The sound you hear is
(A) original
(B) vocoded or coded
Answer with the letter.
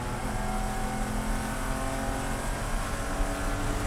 A